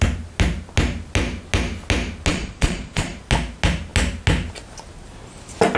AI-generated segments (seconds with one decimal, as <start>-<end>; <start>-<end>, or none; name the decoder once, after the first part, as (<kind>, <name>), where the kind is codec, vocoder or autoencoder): 2.3-3.1 (vocoder, Vocos)